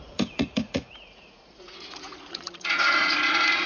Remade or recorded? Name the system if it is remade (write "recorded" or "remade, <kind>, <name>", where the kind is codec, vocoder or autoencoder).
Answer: remade, vocoder, Vocos